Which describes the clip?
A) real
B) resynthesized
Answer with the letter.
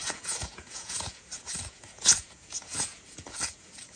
B